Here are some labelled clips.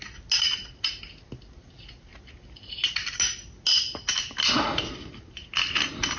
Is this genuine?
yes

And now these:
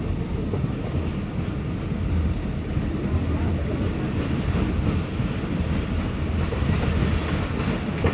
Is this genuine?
yes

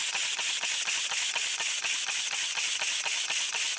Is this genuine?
yes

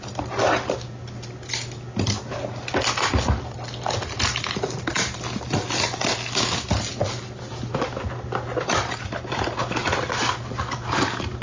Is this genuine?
yes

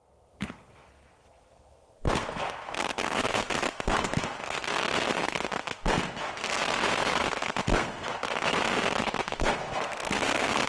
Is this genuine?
no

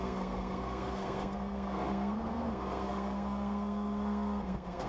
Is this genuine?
no